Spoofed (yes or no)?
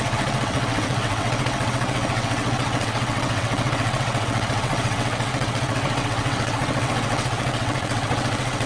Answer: yes